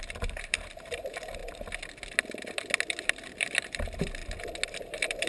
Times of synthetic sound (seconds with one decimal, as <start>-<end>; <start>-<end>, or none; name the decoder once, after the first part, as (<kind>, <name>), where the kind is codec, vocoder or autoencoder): 0.0-1.4 (vocoder, BigVGAN v2); 3.0-4.2; 4.7-5.3

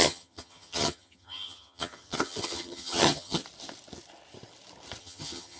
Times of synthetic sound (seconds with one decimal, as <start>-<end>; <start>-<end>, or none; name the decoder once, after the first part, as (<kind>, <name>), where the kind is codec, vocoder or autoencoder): 0.0-3.4 (vocoder, HiFi-GAN); 5.0-5.6

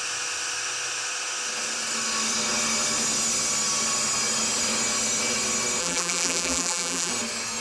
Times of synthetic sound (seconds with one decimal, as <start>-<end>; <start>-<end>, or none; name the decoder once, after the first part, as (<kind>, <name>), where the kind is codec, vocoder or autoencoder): 5.8-7.1 (vocoder, BigVGAN v2)

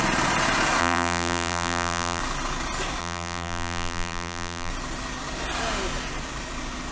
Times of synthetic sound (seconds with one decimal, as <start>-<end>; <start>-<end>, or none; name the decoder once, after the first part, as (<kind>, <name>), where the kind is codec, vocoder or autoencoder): 0.8-2.2 (vocoder, BigVGAN v2); 3.0-4.7